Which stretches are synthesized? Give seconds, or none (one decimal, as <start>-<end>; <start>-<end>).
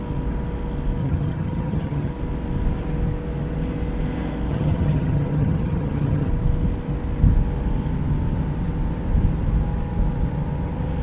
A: 1.0-2.1; 4.5-6.3